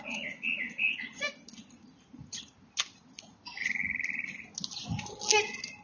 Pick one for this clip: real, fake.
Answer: real